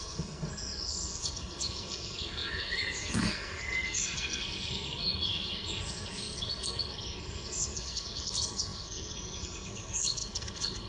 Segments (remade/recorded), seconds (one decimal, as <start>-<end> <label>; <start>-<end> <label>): 0.0-10.9 remade